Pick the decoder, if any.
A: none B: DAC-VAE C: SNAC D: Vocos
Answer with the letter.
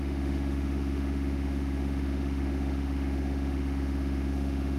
B